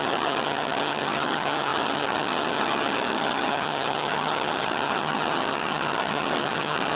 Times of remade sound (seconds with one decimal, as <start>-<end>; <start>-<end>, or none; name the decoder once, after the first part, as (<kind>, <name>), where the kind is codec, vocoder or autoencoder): 0.0-7.0 (vocoder, HiFi-GAN)